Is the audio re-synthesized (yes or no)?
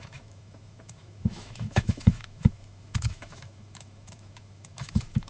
yes